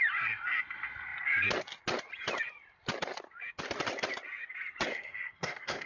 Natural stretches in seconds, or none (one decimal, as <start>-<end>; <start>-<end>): 0.0-4.9